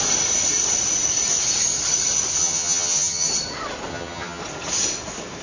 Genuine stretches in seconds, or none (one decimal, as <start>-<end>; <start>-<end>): 0.0-2.4; 3.3-3.9; 4.4-5.4